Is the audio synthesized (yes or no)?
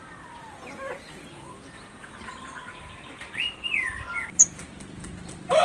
no